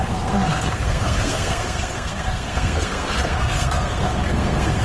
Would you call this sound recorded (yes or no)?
no